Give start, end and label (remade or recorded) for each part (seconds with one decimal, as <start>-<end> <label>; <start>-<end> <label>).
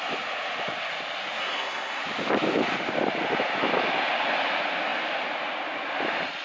0.0-1.4 recorded; 1.4-2.0 remade; 2.0-6.4 recorded